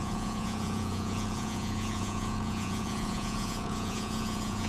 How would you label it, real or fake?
fake